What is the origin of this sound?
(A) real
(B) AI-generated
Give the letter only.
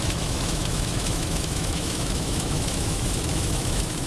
B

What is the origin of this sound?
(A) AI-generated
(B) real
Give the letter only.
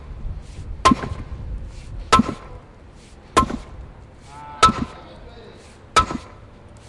B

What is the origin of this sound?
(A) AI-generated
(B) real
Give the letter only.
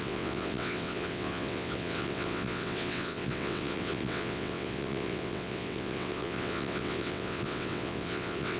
A